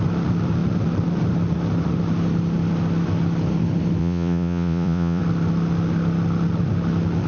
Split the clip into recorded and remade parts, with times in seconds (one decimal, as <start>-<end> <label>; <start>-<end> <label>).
0.0-4.0 recorded; 4.0-5.2 remade; 5.2-7.3 recorded